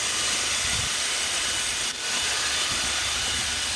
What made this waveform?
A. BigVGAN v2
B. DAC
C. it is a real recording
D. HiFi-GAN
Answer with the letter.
A